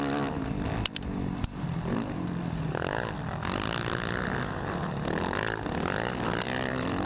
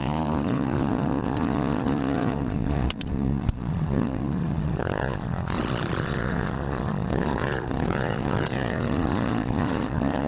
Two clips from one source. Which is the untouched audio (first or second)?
first